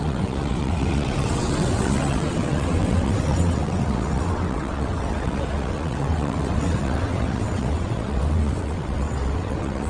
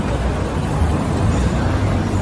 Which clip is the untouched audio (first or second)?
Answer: second